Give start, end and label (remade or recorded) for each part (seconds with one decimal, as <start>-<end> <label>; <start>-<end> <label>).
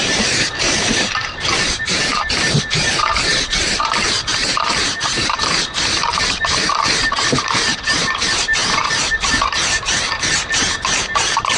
0.0-11.6 remade